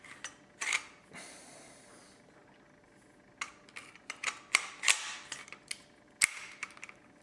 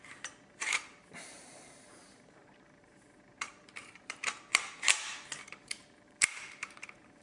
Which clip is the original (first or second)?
first